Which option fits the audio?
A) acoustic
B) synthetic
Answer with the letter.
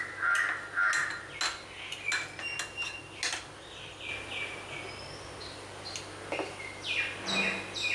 A